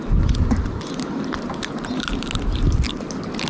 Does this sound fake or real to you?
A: real